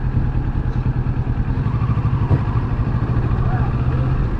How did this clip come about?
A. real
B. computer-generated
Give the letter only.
A